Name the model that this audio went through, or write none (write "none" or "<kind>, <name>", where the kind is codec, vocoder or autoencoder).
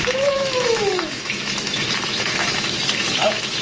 autoencoder, DAC-VAE